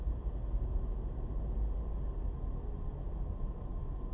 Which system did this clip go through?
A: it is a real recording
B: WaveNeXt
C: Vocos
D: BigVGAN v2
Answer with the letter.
A